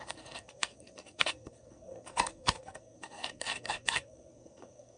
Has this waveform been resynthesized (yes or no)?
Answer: yes